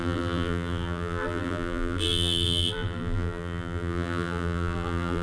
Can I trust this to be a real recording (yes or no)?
no